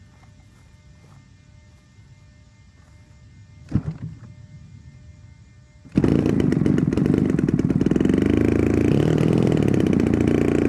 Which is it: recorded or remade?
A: recorded